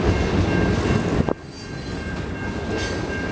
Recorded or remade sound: recorded